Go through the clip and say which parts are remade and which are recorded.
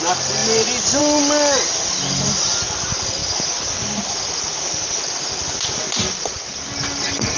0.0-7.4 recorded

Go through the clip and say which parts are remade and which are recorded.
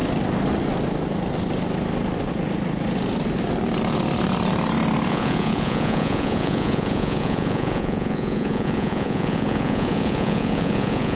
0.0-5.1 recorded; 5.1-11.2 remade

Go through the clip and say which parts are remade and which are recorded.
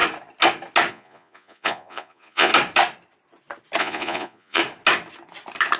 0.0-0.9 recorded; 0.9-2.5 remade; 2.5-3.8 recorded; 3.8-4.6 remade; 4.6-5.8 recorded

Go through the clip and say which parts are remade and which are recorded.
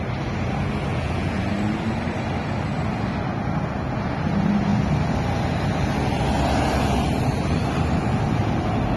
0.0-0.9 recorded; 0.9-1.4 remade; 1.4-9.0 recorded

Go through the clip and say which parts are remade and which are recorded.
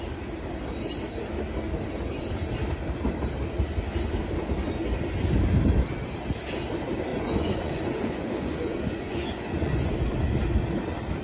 0.0-7.1 recorded; 7.1-9.9 remade; 9.9-11.2 recorded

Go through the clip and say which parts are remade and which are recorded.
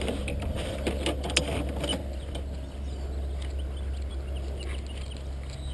0.0-5.7 recorded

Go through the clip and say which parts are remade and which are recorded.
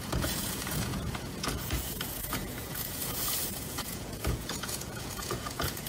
0.0-5.9 remade